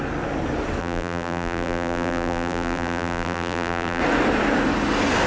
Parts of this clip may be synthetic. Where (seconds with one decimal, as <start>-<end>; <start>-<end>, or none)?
0.8-4.0